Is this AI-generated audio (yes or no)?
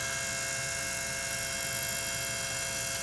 no